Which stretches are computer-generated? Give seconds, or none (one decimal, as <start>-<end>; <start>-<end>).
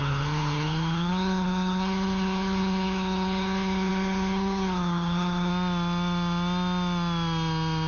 0.0-5.5